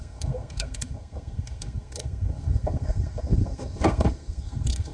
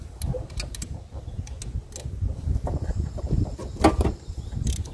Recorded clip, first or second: second